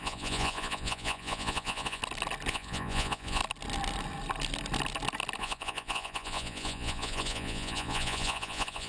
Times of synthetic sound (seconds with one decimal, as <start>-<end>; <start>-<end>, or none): 0.0-2.0; 2.5-3.4; 5.4-8.9